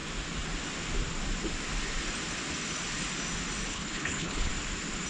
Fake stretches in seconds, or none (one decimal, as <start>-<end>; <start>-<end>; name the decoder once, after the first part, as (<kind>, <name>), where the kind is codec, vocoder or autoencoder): 3.7-4.5 (codec, HILCodec)